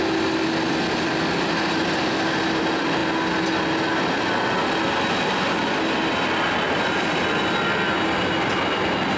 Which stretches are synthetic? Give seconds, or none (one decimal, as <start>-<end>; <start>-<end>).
none